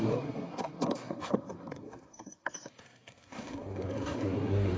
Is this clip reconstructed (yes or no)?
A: yes